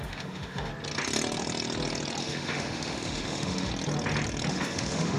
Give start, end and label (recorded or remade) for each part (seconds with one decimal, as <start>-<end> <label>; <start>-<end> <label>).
0.0-0.7 remade; 0.7-2.2 recorded; 2.2-3.7 remade; 3.7-4.5 recorded; 4.5-5.2 remade